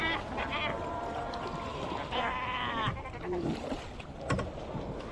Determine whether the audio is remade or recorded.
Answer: recorded